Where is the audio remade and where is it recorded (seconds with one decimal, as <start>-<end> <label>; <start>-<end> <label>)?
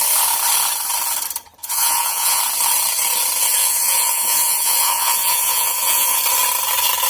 0.0-1.6 recorded; 1.6-2.4 remade; 2.4-3.6 recorded; 3.6-6.2 remade; 6.2-7.1 recorded